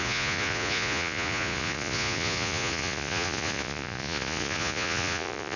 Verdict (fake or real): fake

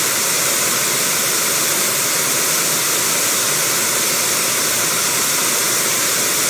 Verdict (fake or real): real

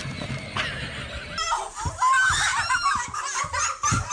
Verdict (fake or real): real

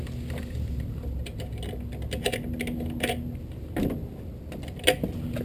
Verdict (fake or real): real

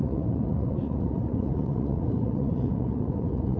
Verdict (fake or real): fake